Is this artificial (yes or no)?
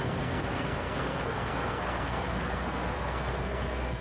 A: yes